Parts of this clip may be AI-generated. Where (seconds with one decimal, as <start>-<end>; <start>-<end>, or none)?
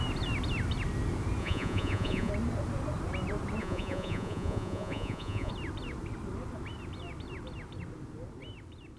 1.4-2.3; 3.6-5.5